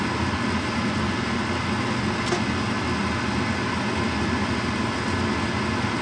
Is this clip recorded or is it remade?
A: recorded